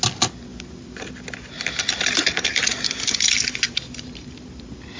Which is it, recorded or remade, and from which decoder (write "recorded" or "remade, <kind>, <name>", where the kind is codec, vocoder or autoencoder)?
recorded